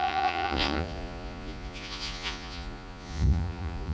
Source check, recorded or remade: remade